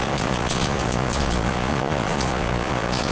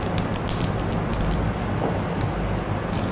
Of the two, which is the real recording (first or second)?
second